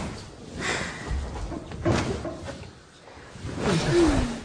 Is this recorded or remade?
recorded